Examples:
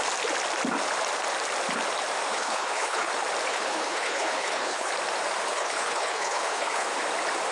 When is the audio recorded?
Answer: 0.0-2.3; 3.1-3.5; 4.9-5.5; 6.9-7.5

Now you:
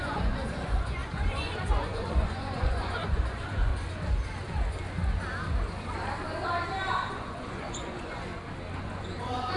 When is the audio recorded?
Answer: 3.7-6.9; 8.3-8.8